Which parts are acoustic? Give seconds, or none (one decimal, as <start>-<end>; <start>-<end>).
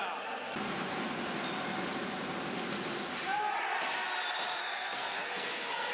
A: 0.0-4.6